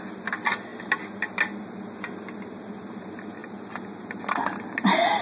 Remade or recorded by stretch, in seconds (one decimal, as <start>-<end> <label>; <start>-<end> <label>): 0.0-5.2 recorded